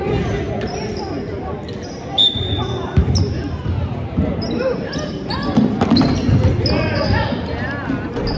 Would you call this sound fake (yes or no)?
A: no